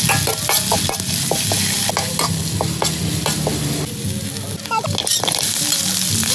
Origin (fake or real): real